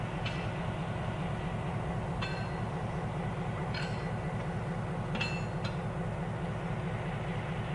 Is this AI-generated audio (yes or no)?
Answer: no